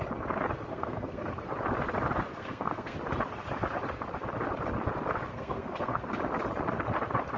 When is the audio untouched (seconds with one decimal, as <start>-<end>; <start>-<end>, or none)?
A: 0.0-0.7; 1.3-2.3; 3.0-5.3; 6.1-7.4